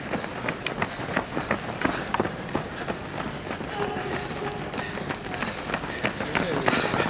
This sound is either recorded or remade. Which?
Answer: recorded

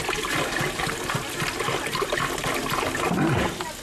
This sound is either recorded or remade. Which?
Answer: recorded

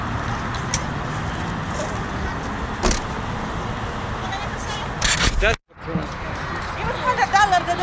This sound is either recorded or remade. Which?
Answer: recorded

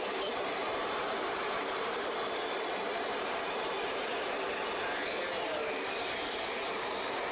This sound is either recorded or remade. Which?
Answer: remade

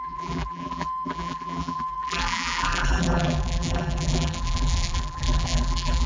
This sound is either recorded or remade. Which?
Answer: remade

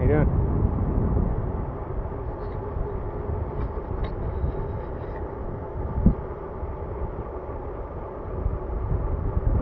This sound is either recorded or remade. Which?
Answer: recorded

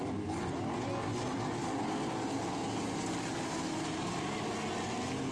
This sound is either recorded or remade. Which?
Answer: recorded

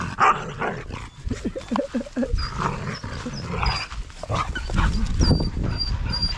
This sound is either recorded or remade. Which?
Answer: recorded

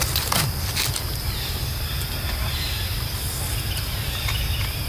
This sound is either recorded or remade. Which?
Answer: recorded